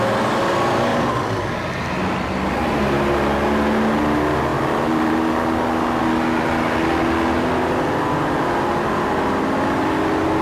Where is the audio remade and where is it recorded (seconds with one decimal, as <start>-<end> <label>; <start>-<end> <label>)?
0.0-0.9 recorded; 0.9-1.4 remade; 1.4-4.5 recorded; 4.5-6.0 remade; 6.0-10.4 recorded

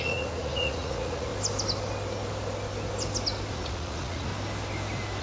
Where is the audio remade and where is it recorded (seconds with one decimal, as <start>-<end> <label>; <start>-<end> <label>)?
0.0-1.3 remade; 1.3-3.5 recorded; 3.5-4.3 remade; 4.3-5.2 recorded

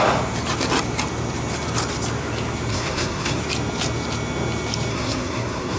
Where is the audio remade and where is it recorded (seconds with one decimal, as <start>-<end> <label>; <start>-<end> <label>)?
0.0-2.7 recorded; 2.7-3.4 remade; 3.4-4.9 recorded; 4.9-5.8 remade

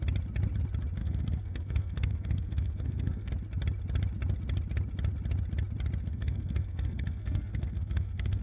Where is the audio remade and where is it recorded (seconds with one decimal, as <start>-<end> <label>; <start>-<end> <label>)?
0.0-1.0 recorded; 1.0-3.3 remade; 3.3-6.1 recorded; 6.1-8.4 remade

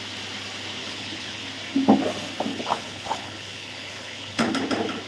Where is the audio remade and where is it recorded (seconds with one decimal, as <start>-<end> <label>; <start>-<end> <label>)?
0.0-0.8 recorded; 0.8-1.4 remade; 1.4-2.5 recorded; 2.5-4.5 remade; 4.5-5.1 recorded

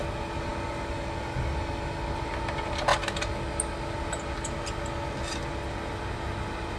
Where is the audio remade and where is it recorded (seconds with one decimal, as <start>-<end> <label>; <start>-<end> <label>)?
0.0-6.8 recorded